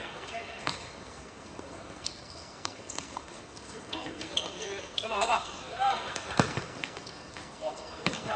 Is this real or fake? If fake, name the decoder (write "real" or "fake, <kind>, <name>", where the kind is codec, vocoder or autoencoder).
fake, codec, SNAC